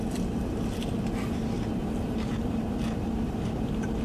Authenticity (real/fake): real